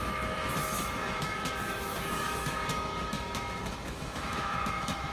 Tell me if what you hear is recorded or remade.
remade